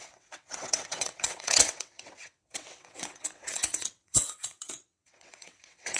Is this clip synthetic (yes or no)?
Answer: yes